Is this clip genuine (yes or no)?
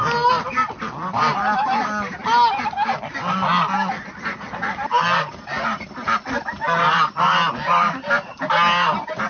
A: yes